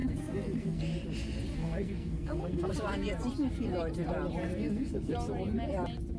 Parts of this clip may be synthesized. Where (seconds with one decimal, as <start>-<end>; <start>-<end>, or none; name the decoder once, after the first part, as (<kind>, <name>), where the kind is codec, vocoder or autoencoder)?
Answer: 0.0-0.8 (codec, SNAC); 1.6-2.7; 4.4-5.1